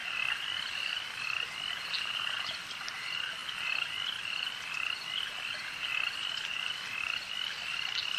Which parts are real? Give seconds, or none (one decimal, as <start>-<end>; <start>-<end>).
0.0-8.2